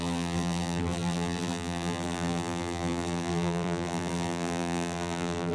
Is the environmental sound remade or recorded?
remade